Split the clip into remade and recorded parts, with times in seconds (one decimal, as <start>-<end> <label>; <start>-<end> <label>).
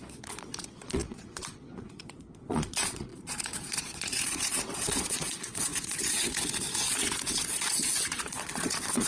0.0-9.1 remade